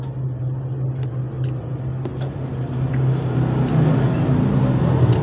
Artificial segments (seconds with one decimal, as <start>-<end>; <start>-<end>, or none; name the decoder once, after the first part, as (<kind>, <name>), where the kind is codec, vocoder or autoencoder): none